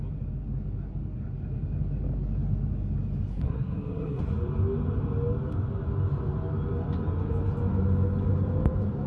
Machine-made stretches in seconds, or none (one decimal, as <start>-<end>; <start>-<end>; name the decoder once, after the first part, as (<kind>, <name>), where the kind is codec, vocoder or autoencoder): 3.3-4.2 (codec, SNAC)